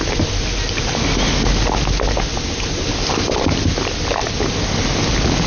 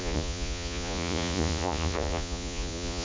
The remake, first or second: second